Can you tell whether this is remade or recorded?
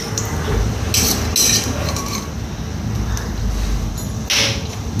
recorded